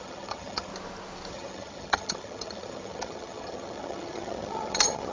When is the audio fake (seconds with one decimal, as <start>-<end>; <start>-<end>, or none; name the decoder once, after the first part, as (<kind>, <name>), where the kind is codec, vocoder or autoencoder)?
0.0-0.7 (vocoder, HiFi-GAN); 1.3-5.1